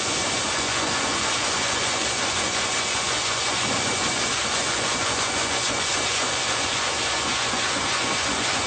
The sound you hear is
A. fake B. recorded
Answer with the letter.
A